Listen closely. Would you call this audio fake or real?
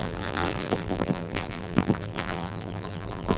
fake